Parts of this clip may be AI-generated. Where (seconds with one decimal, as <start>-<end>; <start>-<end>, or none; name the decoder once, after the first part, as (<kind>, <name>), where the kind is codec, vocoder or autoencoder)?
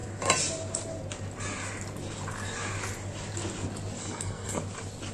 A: 4.0-4.6 (codec, SNAC)